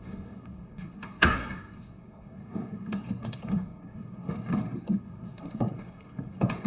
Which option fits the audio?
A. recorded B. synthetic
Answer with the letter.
B